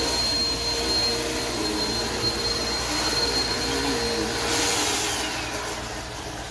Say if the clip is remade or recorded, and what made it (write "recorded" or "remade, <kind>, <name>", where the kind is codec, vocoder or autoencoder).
recorded